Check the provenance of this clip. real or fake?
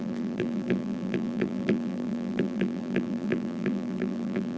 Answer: fake